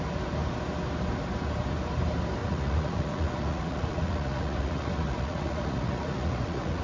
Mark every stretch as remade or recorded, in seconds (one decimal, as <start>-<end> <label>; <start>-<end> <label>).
0.0-2.4 recorded; 2.4-6.8 remade